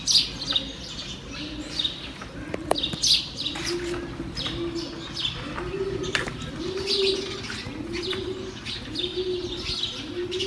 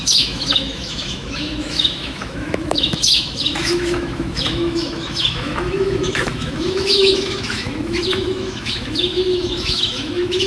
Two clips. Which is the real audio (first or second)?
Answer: first